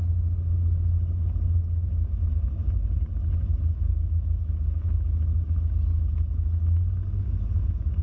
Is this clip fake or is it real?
real